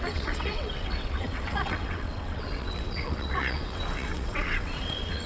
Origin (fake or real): fake